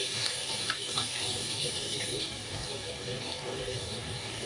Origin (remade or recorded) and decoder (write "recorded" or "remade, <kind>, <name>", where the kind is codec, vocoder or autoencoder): remade, codec, DAC